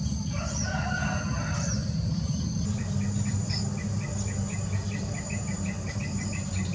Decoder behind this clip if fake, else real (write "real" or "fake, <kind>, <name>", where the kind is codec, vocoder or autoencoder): fake, vocoder, BigVGAN v2